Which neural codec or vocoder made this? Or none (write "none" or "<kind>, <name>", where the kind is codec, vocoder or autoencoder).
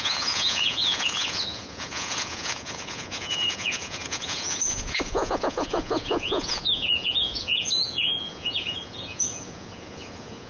vocoder, Vocos